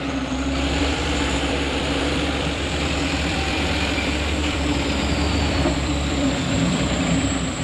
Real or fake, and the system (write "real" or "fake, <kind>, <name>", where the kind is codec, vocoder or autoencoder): fake, vocoder, BigVGAN v2